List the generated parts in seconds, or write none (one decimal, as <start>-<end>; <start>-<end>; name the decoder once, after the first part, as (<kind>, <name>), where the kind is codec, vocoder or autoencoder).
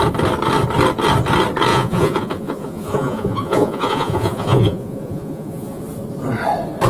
1.7-5.8 (vocoder, Vocos)